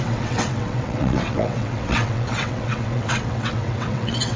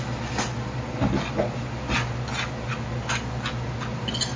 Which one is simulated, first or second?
first